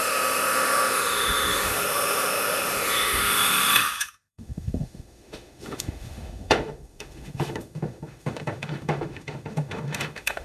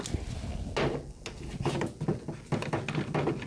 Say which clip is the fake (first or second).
first